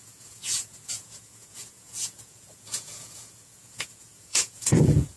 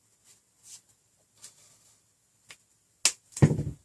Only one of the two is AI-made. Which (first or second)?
first